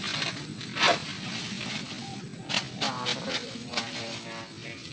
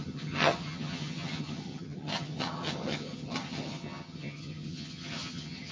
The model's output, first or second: second